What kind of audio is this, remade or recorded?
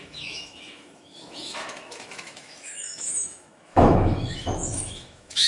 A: remade